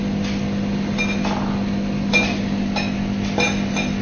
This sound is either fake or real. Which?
real